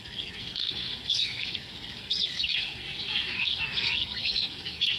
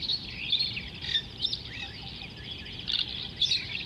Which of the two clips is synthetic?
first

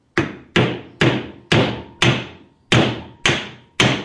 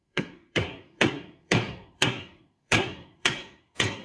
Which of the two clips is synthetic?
second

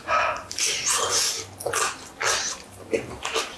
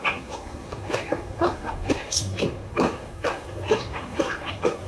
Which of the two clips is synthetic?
second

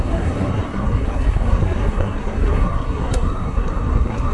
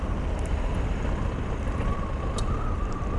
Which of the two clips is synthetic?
first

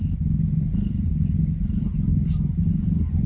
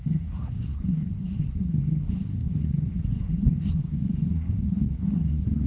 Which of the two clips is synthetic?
second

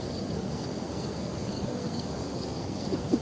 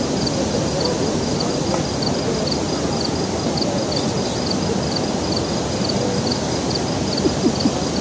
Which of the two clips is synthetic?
first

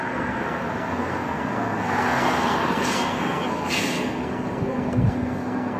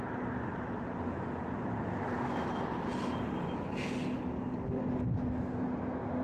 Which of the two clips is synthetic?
first